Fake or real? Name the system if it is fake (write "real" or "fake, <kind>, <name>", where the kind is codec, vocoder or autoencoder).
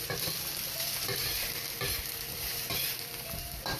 fake, vocoder, BigVGAN v2